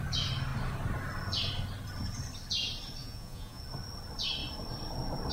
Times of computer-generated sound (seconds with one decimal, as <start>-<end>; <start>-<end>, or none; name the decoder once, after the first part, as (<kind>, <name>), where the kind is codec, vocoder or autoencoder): 3.0-3.6 (vocoder, Vocos)